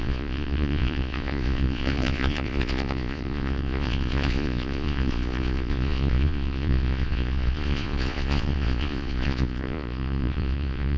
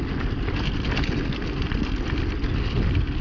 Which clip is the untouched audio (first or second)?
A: second